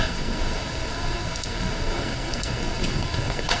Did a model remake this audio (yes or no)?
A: yes